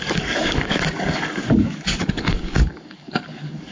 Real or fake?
fake